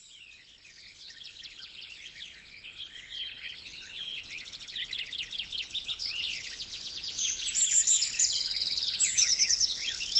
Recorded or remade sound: remade